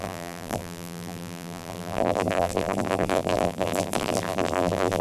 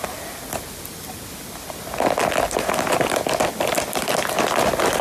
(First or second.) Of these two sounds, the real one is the second